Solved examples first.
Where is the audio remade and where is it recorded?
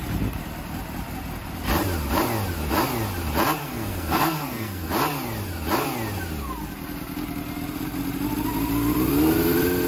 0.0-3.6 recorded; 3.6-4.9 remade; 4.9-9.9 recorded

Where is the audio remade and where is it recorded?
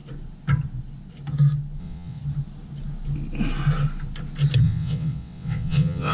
0.0-1.8 recorded; 1.8-2.2 remade; 2.2-4.6 recorded; 4.6-6.1 remade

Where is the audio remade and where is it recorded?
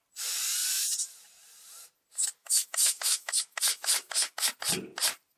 0.0-2.4 recorded; 2.4-4.5 remade; 4.5-5.4 recorded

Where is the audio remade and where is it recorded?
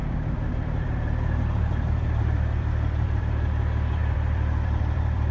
0.0-3.2 remade; 3.2-4.0 recorded; 4.0-5.3 remade